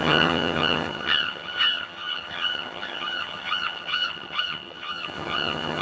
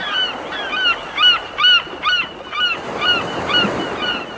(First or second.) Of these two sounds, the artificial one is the first